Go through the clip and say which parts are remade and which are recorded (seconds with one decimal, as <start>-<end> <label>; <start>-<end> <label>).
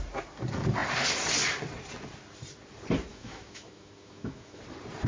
0.0-3.1 recorded; 3.1-4.6 remade; 4.6-5.1 recorded